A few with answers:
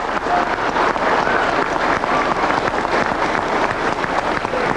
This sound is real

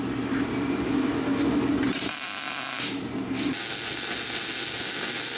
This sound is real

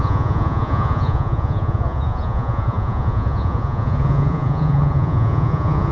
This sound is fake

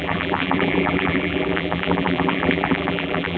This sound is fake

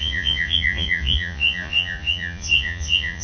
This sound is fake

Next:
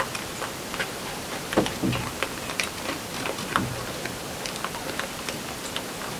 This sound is fake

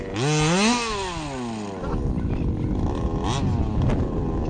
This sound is real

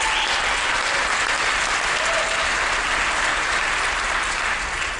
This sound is real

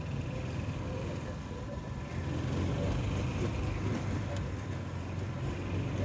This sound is real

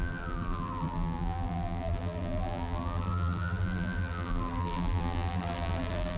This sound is fake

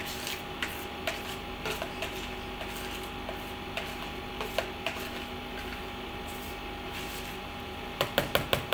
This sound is real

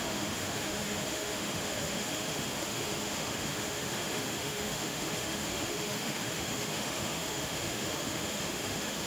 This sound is fake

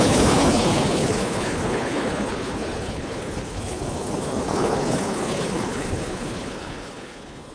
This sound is fake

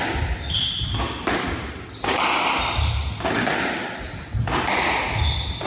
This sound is real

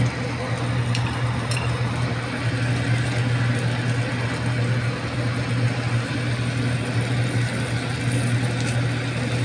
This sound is real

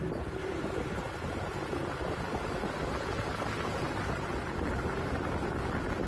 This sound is real